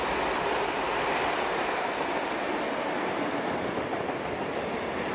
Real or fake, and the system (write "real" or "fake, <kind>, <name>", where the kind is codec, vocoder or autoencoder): real